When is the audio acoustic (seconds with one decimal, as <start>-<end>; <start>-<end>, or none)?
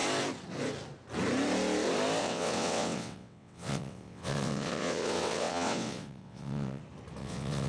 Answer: 0.0-2.2; 6.8-7.2